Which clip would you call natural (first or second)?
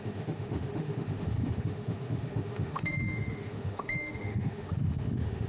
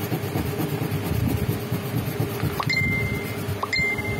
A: second